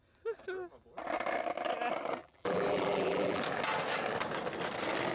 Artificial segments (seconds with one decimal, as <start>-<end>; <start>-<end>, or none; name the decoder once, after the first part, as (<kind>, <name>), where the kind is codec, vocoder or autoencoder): 2.2-3.4 (vocoder, BigVGAN v2)